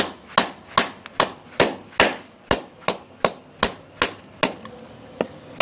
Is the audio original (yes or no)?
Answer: yes